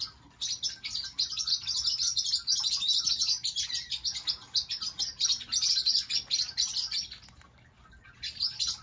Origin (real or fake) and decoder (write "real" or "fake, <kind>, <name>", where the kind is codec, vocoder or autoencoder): real